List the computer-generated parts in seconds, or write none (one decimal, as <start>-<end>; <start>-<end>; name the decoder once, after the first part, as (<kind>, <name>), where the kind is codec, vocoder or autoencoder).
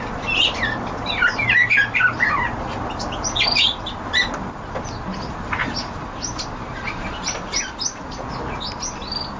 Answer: 5.6-7.7 (vocoder, BigVGAN v2)